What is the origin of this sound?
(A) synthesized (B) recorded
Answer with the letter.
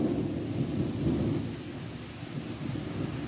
B